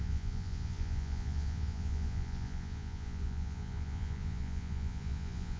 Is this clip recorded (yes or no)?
no